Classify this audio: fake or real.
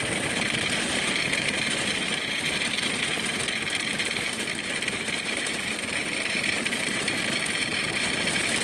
fake